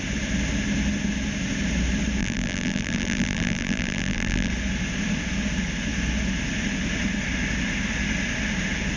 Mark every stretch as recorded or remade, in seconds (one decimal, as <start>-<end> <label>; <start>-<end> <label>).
0.0-2.2 recorded; 2.2-4.5 remade; 4.5-9.0 recorded